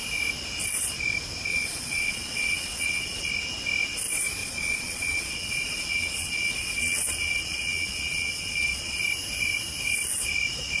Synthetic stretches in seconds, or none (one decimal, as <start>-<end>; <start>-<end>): 1.5-3.3; 4.4-9.0